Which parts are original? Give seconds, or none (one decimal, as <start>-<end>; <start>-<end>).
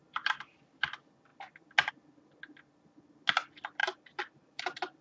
0.5-3.8; 4.6-5.0